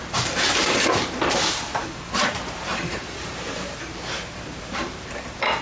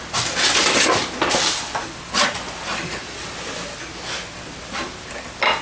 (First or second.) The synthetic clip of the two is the first